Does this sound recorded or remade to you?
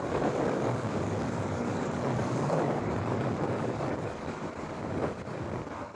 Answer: remade